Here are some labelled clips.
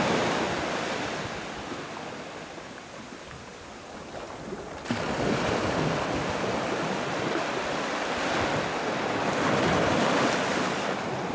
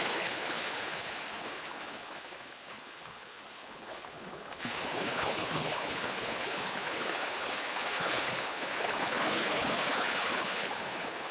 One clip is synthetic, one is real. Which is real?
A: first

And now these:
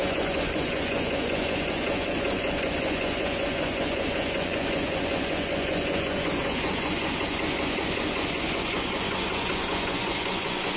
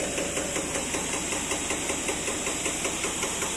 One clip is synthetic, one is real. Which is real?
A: second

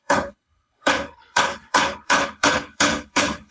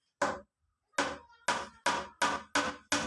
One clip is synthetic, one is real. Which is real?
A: second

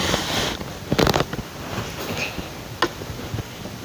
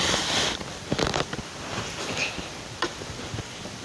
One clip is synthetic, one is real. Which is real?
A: first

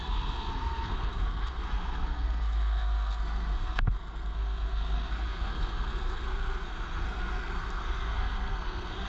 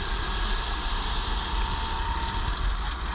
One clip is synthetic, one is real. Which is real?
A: second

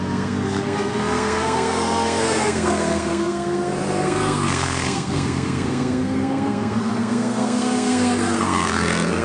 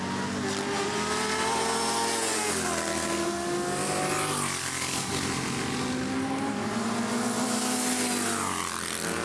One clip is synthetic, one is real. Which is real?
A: second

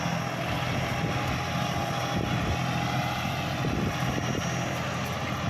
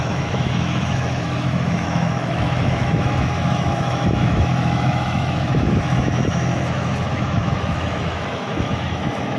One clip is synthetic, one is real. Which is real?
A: first